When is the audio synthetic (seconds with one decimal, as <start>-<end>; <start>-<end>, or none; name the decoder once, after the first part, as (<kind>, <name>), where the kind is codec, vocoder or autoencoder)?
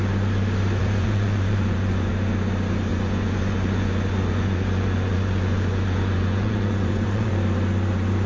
0.8-2.1 (vocoder, Vocos); 2.9-7.3